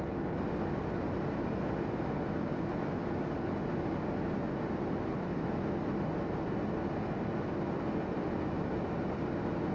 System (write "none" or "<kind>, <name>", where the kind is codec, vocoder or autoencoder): none